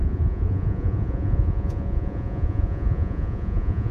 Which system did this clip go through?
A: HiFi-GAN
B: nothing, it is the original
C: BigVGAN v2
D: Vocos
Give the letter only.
D